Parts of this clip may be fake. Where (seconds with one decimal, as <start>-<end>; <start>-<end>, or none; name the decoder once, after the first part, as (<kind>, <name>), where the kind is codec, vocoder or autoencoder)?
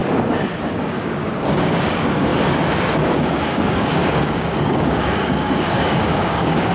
0.6-2.3 (codec, DAC); 3.0-6.7